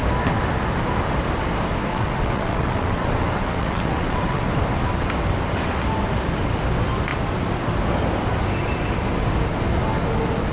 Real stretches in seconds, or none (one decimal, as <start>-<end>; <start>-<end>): 0.0-1.9; 4.5-10.5